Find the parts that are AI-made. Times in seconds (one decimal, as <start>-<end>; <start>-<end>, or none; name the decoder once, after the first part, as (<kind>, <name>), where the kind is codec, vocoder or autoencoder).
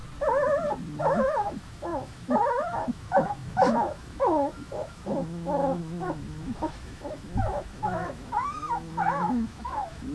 1.0-10.1 (autoencoder, DAC-VAE)